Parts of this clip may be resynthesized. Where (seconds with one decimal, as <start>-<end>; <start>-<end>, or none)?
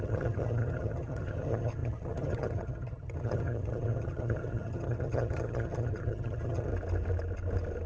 0.0-6.7